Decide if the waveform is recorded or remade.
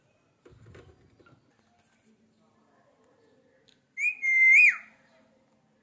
recorded